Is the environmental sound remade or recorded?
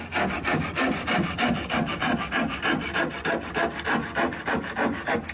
recorded